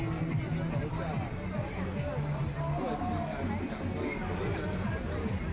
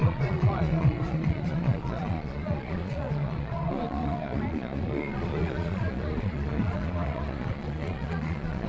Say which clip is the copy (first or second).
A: second